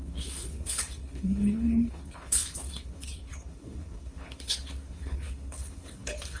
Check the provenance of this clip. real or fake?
fake